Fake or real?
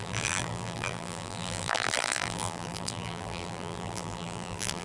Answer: fake